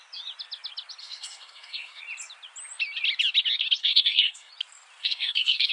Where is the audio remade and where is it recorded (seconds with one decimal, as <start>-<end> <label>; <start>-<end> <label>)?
0.0-1.0 recorded; 1.0-2.0 remade; 2.0-3.8 recorded; 3.8-4.5 remade; 4.5-5.0 recorded; 5.0-5.7 remade